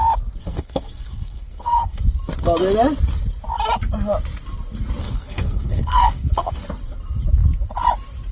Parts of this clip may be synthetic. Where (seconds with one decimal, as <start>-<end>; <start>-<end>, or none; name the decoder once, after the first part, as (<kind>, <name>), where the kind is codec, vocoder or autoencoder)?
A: 0.4-2.0 (codec, SNAC); 5.0-6.6